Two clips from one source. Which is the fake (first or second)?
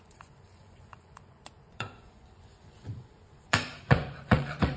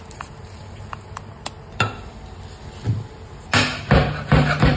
first